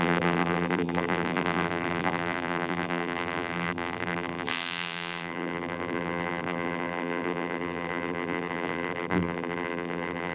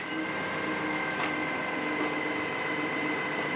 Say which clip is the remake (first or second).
first